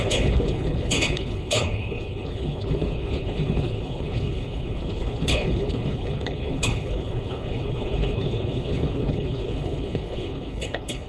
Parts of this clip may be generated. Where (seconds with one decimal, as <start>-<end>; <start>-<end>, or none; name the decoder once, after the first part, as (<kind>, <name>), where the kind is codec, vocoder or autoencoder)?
0.0-11.1 (codec, HILCodec)